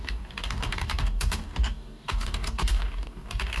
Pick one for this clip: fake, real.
fake